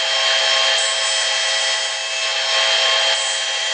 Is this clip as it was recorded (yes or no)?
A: yes